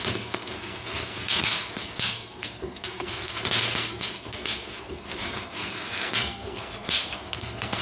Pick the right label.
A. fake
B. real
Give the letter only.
A